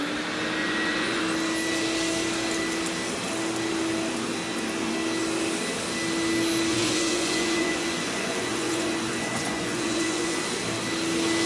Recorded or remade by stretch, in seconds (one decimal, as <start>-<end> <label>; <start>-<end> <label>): 0.0-0.6 recorded; 0.6-1.2 remade; 1.2-6.7 recorded; 6.7-10.4 remade; 10.4-11.5 recorded